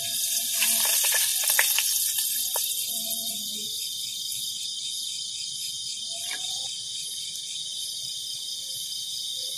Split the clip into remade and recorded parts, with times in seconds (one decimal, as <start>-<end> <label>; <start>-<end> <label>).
0.0-1.3 remade; 1.3-2.2 recorded; 2.2-9.6 remade